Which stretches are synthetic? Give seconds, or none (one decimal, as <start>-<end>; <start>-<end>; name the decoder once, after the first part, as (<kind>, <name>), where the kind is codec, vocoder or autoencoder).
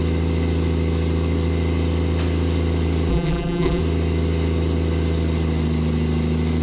3.1-3.8 (vocoder, BigVGAN v2)